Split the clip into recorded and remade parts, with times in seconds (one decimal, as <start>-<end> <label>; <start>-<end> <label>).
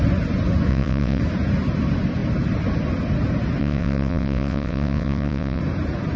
0.0-0.7 recorded; 0.7-1.2 remade; 1.2-3.6 recorded; 3.6-5.6 remade; 5.6-6.2 recorded